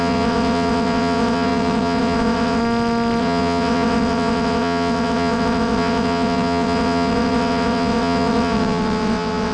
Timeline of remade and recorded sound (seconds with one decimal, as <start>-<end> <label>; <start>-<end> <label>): 0.0-2.6 remade; 2.6-3.2 recorded; 3.2-9.5 remade